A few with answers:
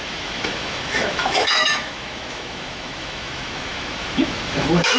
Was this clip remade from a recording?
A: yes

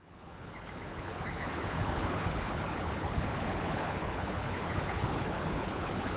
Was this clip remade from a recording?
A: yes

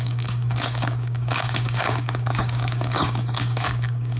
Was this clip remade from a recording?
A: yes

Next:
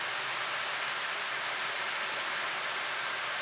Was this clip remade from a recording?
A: no